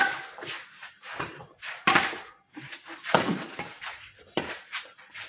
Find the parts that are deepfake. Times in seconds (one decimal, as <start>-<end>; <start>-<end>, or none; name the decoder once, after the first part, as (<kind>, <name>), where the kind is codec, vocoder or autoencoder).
none